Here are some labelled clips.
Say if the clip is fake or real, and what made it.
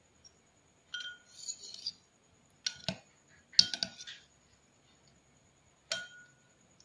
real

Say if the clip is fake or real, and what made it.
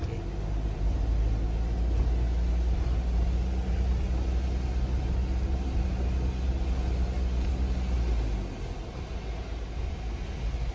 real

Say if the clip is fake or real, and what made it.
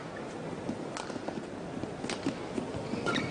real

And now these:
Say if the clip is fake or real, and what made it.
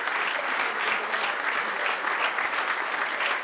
real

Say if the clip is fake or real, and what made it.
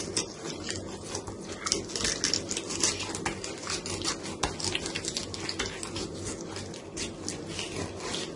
real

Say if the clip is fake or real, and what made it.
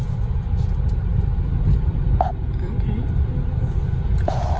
real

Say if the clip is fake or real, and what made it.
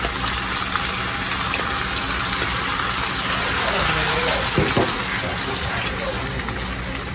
real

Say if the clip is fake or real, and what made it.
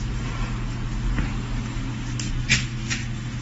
real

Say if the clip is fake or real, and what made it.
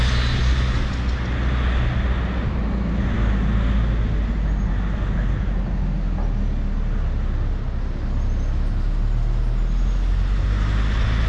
real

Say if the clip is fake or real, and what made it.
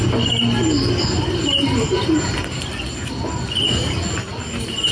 real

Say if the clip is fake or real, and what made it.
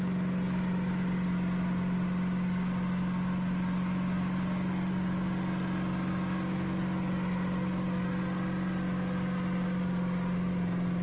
real